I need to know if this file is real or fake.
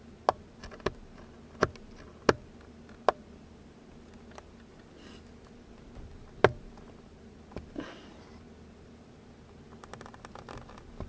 real